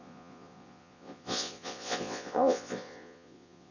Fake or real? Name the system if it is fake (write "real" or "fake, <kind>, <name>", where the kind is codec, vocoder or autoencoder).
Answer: fake, vocoder, Vocos